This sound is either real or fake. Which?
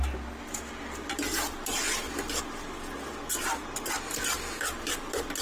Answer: real